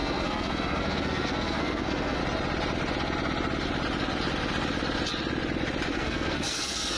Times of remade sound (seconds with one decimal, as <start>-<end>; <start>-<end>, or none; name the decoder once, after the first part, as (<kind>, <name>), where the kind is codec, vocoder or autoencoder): 0.0-2.2 (codec, SNAC); 5.9-7.0